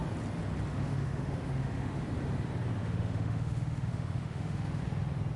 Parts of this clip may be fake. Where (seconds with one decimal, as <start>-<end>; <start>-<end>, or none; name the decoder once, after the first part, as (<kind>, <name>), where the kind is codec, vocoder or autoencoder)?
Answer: 0.7-2.0 (autoencoder, DAC-VAE); 2.8-4.8